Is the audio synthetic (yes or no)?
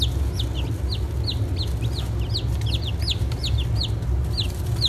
no